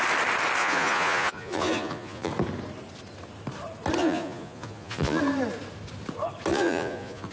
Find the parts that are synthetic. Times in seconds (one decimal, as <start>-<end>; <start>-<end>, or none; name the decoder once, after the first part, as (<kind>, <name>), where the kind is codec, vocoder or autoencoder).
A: 0.6-2.3 (vocoder, Vocos); 4.0-5.2; 6.5-7.3